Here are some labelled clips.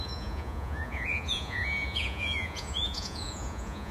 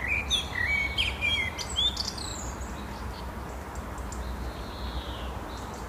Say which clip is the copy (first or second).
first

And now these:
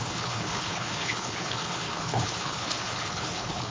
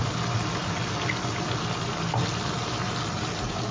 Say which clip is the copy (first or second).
first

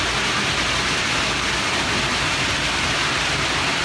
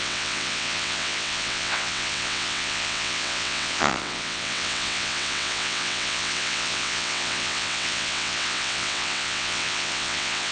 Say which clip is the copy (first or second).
second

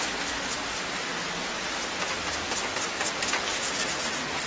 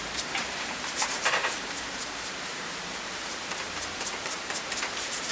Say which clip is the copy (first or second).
second